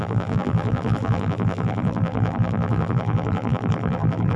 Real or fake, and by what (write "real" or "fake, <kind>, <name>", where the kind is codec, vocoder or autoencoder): fake, vocoder, BigVGAN v2